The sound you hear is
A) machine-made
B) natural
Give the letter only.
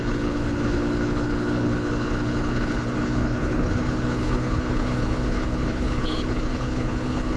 A